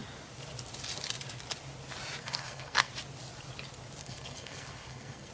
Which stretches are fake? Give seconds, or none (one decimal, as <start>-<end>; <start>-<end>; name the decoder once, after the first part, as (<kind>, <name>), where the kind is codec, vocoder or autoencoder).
2.2-2.9 (codec, SNAC); 4.0-5.3